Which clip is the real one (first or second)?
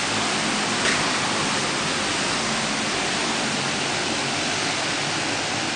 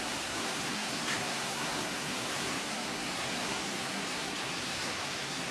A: first